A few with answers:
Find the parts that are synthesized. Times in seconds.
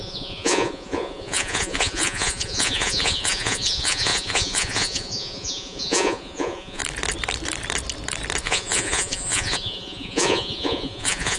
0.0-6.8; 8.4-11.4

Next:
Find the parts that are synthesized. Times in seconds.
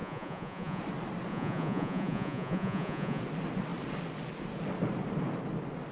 0.0-0.8; 1.3-3.2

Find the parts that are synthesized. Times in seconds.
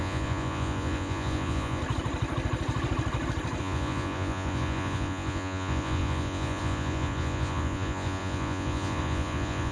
0.0-1.8; 3.6-9.7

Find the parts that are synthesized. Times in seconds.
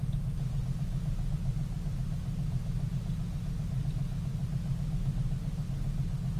0.0-0.6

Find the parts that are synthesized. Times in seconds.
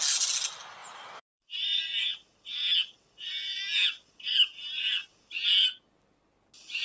0.8-1.8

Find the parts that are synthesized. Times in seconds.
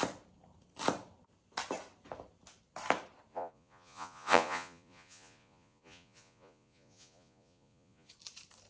3.3-8.1